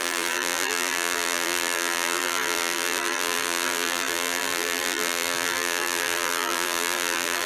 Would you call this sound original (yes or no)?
no